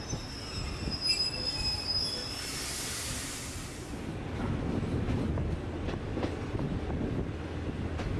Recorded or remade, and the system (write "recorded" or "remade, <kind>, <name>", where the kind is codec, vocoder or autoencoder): recorded